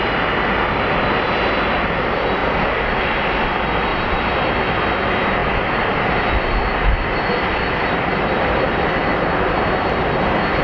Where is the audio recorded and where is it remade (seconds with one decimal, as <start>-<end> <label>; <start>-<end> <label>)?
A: 0.0-2.4 recorded; 2.4-3.0 remade; 3.0-3.9 recorded; 3.9-4.6 remade; 4.6-5.4 recorded; 5.4-8.6 remade; 8.6-10.6 recorded